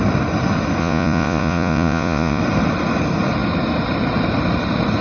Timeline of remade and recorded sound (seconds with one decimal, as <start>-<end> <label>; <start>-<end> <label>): 0.0-0.8 recorded; 0.8-2.4 remade; 2.4-5.0 recorded